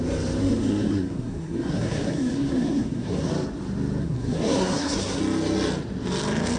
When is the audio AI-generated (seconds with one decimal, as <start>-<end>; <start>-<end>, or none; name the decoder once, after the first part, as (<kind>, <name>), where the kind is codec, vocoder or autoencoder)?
0.4-3.3 (codec, SNAC); 4.0-5.2